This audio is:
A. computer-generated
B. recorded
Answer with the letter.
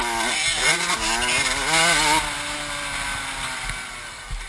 B